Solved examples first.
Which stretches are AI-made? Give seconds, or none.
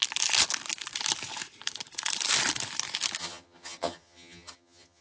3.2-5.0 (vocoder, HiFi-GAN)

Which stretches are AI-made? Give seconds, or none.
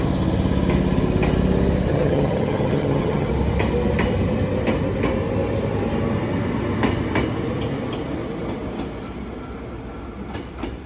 1.9-3.3 (vocoder, HiFi-GAN)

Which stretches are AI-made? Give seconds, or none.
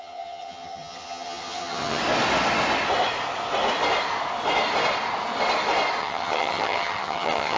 0.0-2.0 (vocoder, HiFi-GAN); 6.0-7.6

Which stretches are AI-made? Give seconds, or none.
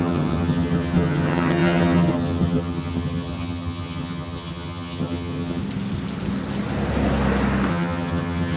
0.0-5.6 (vocoder, HiFi-GAN); 7.7-8.6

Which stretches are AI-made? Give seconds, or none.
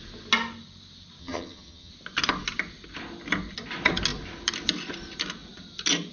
1.2-1.9 (vocoder, HiFi-GAN)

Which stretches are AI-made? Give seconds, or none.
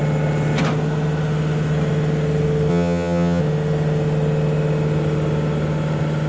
2.7-3.4 (vocoder, HiFi-GAN)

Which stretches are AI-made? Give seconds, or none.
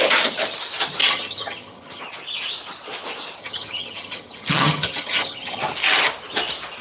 1.0-2.0 (vocoder, HiFi-GAN); 3.4-5.6